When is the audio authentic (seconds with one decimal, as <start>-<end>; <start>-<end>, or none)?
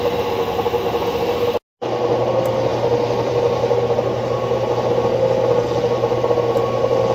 0.0-7.1